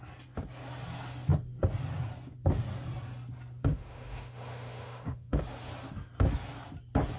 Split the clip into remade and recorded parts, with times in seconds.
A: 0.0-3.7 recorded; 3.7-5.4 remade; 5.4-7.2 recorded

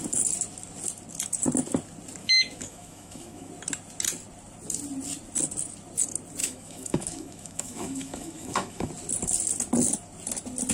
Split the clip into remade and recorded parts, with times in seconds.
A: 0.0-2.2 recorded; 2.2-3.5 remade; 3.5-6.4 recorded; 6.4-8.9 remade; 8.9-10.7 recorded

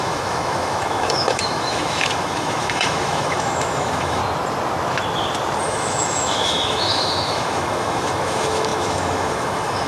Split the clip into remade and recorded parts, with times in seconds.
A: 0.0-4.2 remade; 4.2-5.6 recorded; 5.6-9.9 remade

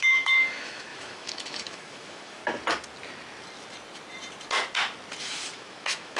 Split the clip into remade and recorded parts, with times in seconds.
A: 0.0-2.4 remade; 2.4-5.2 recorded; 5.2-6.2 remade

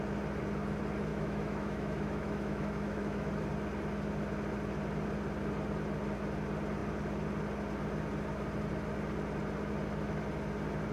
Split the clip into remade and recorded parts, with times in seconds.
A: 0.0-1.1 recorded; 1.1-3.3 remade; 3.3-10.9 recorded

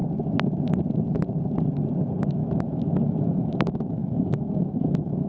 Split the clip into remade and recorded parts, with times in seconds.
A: 0.0-2.2 recorded; 2.2-5.3 remade

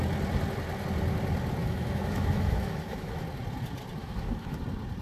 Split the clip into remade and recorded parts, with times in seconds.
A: 0.0-1.6 recorded; 1.6-3.2 remade; 3.2-4.0 recorded; 4.0-4.6 remade; 4.6-5.0 recorded